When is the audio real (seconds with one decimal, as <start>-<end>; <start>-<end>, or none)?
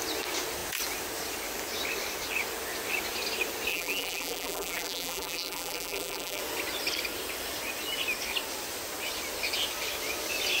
0.0-3.7; 6.4-10.6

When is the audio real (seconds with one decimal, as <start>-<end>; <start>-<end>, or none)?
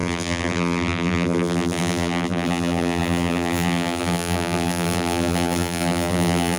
none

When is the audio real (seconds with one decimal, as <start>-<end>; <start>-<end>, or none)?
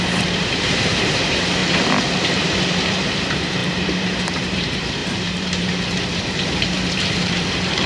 1.6-2.8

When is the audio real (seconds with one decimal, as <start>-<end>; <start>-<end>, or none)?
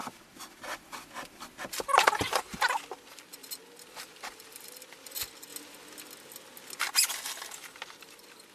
0.0-0.6; 3.4-4.0; 5.5-6.8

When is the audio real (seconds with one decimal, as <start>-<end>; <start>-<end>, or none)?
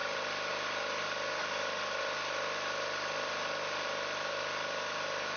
0.5-5.4